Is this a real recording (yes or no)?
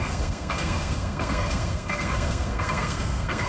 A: no